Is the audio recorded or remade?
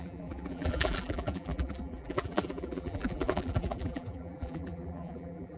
remade